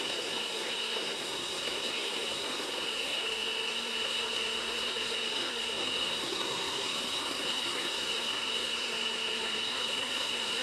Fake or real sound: fake